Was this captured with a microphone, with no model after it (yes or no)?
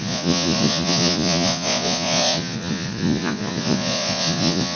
no